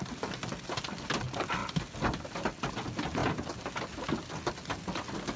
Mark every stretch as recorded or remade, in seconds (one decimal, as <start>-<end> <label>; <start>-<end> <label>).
0.0-5.4 recorded